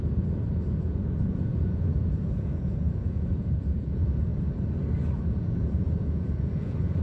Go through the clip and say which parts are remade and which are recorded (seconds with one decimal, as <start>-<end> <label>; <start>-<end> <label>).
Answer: 0.0-4.3 remade; 4.3-5.3 recorded; 5.3-7.0 remade